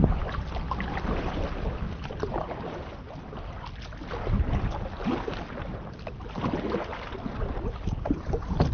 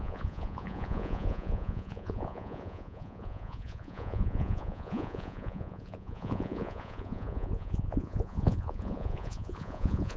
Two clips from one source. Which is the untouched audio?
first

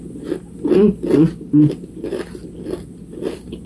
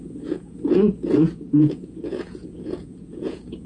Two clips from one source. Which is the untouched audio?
first